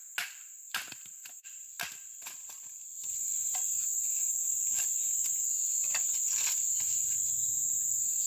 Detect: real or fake real